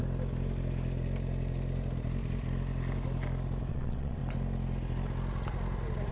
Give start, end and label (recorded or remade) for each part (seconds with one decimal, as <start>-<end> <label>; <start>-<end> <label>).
0.0-3.7 recorded; 3.7-4.2 remade; 4.2-6.1 recorded

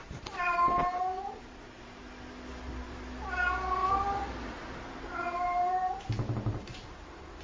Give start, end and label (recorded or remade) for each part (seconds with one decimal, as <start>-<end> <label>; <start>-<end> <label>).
0.0-1.9 remade; 1.9-3.8 recorded; 3.8-6.9 remade; 6.9-7.4 recorded

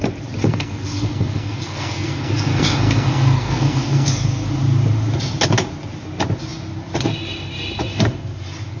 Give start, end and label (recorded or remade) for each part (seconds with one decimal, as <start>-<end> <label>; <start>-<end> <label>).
0.0-0.4 recorded; 0.4-4.5 remade; 4.5-8.8 recorded

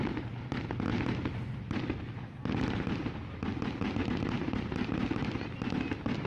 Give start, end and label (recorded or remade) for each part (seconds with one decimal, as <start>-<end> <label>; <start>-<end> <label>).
0.0-6.3 recorded

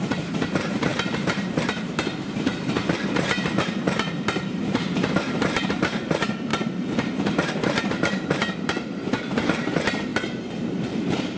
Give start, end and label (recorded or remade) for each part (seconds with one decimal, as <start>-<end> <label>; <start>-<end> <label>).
0.0-10.1 remade; 10.1-10.7 recorded; 10.7-11.4 remade

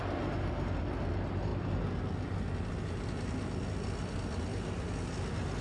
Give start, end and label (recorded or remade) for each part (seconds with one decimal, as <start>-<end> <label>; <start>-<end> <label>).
0.0-5.6 recorded

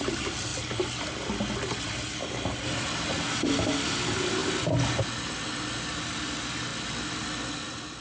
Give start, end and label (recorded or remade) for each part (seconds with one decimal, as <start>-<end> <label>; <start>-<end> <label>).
0.0-8.0 recorded

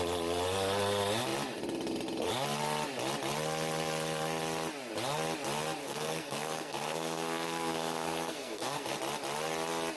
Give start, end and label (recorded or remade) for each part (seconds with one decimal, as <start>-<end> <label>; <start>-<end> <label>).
0.0-5.8 recorded; 5.8-9.0 remade; 9.0-10.0 recorded